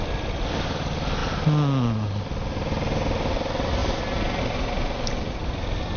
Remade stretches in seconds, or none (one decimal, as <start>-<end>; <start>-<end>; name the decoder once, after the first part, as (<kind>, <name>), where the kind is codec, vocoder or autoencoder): none